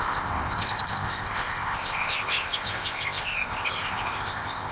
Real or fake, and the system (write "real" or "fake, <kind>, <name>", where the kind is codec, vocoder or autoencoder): fake, codec, ZipCodec